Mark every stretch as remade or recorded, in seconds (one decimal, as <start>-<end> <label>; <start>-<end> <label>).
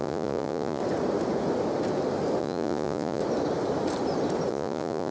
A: 0.0-0.8 remade; 0.8-2.4 recorded; 2.4-3.2 remade; 3.2-4.5 recorded; 4.5-5.1 remade